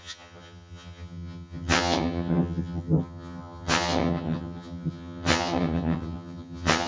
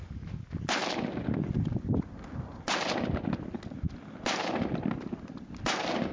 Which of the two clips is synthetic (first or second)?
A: first